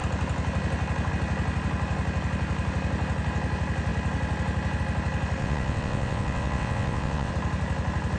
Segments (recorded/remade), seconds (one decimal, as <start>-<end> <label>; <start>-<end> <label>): 0.0-5.4 recorded; 5.4-7.3 remade; 7.3-8.2 recorded